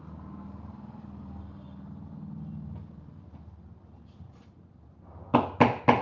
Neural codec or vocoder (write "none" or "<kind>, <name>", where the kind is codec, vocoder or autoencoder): none